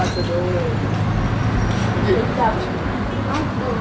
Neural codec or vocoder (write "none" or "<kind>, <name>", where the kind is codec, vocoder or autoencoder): none